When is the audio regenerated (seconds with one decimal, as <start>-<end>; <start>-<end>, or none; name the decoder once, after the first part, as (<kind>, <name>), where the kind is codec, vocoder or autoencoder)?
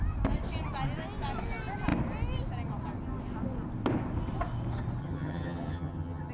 5.0-6.3 (vocoder, HiFi-GAN)